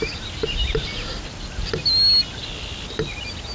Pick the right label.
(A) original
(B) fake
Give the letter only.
A